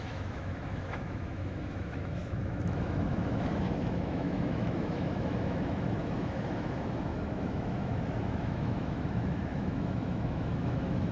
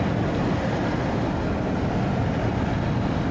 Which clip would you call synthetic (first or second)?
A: first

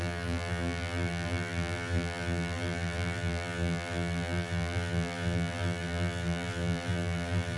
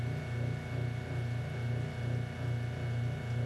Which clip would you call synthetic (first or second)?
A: first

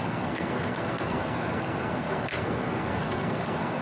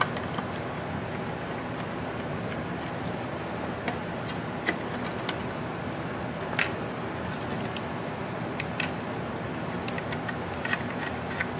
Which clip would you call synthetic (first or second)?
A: first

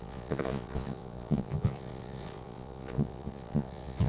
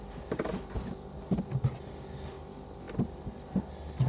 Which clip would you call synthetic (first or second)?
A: first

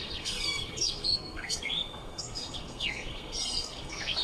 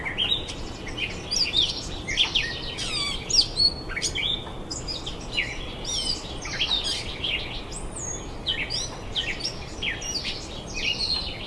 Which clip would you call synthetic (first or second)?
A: first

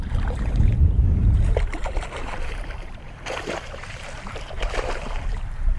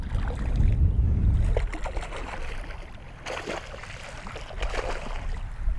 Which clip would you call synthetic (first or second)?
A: first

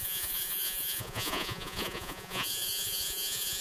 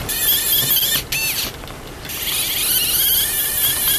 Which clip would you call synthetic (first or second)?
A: first